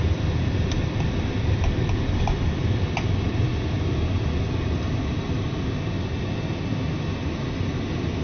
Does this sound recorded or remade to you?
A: recorded